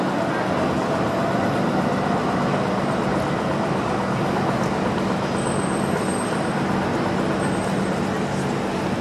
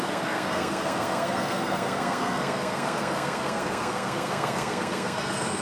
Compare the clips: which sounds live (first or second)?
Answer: first